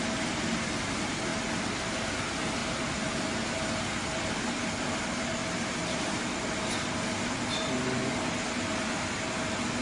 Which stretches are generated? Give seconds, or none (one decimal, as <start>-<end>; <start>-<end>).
1.3-1.9; 5.4-6.4